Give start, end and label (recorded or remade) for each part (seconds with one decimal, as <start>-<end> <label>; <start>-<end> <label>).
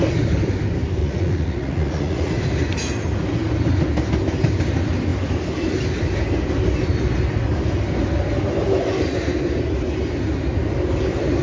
0.0-1.0 recorded; 1.0-2.3 remade; 2.3-11.4 recorded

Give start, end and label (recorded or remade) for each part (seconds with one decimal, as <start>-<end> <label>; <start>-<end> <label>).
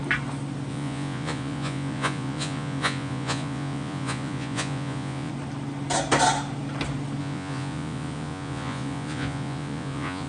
0.0-0.7 recorded; 0.7-5.3 remade; 5.3-7.2 recorded; 7.2-10.3 remade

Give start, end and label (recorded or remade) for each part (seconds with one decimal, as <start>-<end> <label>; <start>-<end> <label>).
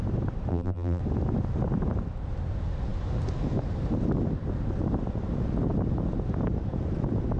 0.0-0.5 recorded; 0.5-1.0 remade; 1.0-7.4 recorded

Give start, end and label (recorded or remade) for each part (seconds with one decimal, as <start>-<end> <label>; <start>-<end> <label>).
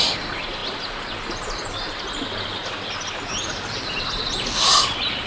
0.0-5.3 recorded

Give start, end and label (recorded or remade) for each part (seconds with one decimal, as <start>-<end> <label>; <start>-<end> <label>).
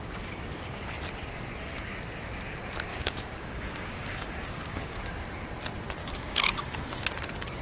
0.0-2.9 recorded; 2.9-5.0 remade; 5.0-6.0 recorded; 6.0-7.1 remade; 7.1-7.6 recorded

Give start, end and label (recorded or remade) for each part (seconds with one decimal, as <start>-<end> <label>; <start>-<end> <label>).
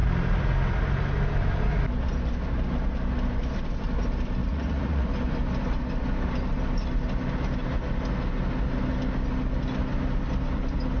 0.0-4.4 recorded; 4.4-5.1 remade; 5.1-11.0 recorded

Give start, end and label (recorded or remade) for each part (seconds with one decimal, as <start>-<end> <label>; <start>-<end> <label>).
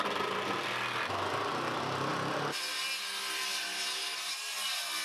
0.0-5.0 recorded